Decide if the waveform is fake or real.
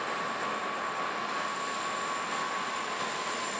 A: real